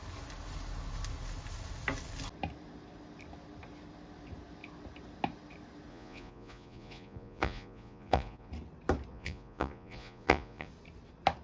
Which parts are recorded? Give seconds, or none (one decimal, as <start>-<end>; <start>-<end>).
0.0-5.9; 8.5-9.1; 10.7-11.4